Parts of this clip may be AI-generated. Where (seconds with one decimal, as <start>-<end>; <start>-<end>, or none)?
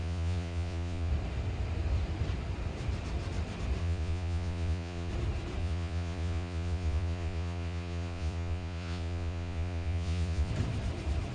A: 0.0-1.1; 3.8-5.1; 5.6-10.5